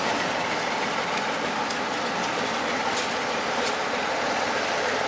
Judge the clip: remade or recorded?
recorded